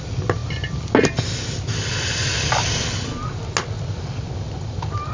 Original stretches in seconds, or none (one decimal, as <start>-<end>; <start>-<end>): 0.0-5.1